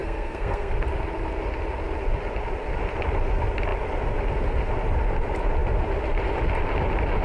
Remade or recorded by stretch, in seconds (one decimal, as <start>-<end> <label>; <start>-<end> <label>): 0.0-0.7 remade; 0.7-7.2 recorded